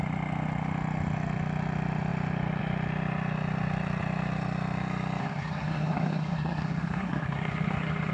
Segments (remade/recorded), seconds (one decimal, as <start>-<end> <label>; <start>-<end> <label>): 0.0-5.2 recorded; 5.2-8.1 remade